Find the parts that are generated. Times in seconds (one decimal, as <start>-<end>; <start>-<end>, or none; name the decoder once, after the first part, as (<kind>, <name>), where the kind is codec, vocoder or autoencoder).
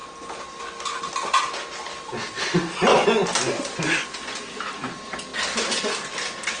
none